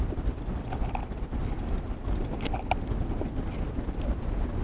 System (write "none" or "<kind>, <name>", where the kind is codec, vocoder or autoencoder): none